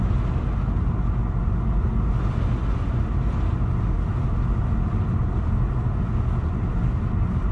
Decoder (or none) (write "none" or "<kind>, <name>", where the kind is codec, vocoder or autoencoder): none